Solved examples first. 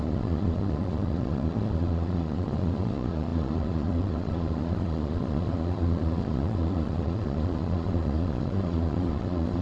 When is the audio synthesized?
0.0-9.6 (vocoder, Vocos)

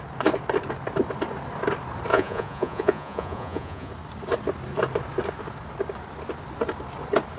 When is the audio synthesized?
2.1-3.9 (vocoder, Vocos)

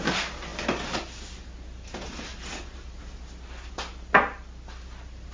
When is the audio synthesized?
none

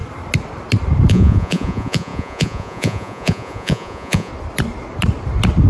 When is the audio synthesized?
1.1-4.3 (vocoder, Vocos)

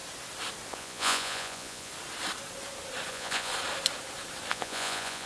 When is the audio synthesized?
0.7-1.9 (vocoder, Vocos); 3.1-3.5; 4.5-5.3

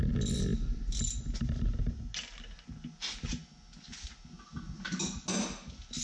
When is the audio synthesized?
none

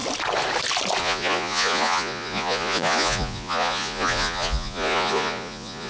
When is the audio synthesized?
1.0-5.9 (vocoder, Vocos)

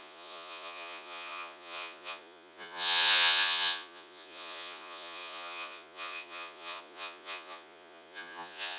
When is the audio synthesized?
0.0-8.8 (vocoder, Vocos)